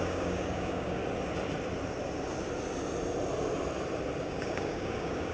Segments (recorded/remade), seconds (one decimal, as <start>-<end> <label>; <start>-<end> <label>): 0.0-1.0 remade; 1.0-4.2 recorded; 4.2-5.3 remade